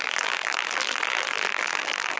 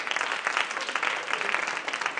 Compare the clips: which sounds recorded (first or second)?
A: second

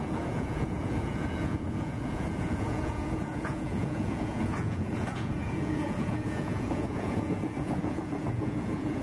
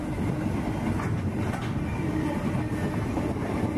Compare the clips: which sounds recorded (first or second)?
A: second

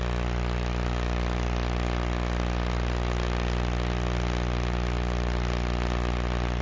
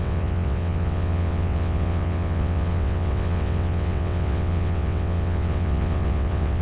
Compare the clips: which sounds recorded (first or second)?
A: first